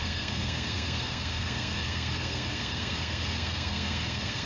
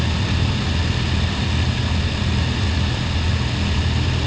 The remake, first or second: first